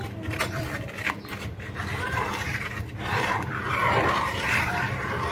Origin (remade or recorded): remade